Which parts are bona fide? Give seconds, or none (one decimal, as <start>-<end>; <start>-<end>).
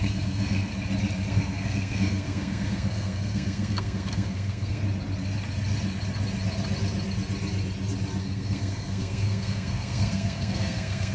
0.7-1.3; 4.8-8.2